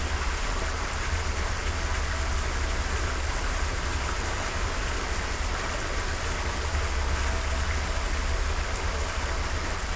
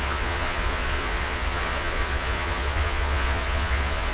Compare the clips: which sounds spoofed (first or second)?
second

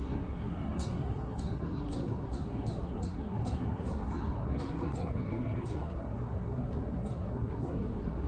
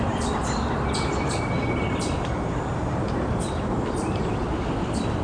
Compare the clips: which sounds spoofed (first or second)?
first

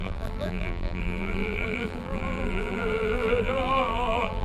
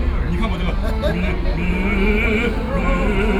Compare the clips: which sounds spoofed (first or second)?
first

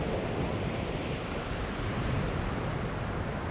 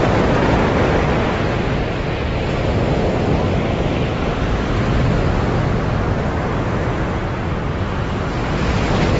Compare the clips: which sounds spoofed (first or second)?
first